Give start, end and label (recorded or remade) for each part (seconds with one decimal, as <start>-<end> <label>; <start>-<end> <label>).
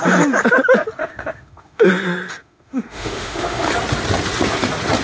0.0-1.0 recorded; 1.0-1.9 remade; 1.9-2.4 recorded; 2.4-3.7 remade; 3.7-5.0 recorded